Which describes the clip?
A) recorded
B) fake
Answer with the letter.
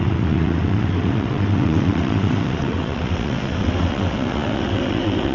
B